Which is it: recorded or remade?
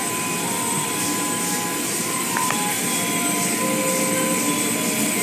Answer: recorded